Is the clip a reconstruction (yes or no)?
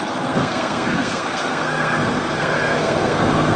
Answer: yes